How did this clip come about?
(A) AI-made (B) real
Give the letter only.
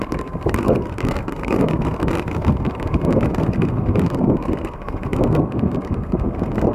A